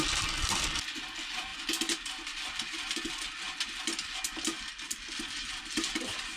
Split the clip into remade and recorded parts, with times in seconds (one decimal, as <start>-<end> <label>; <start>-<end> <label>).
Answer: 0.0-6.4 recorded